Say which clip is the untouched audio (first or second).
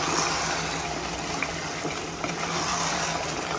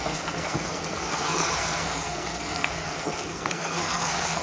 first